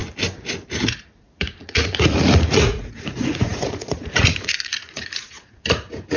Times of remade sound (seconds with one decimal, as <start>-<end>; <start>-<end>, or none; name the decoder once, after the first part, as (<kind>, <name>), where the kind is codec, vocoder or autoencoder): 1.2-6.2 (vocoder, Vocos)